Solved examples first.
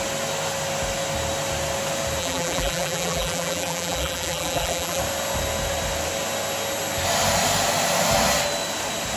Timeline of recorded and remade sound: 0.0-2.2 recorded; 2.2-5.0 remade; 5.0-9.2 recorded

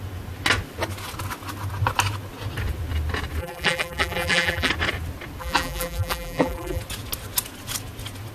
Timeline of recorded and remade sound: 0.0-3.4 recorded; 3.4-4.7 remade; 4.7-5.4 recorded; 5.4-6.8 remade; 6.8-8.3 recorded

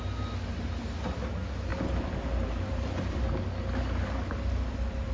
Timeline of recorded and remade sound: 0.0-1.7 recorded; 1.7-3.4 remade; 3.4-5.1 recorded